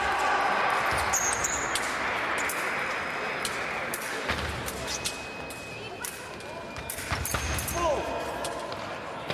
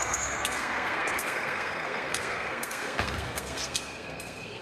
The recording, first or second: first